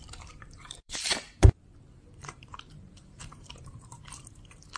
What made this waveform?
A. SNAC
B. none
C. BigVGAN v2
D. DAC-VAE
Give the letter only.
C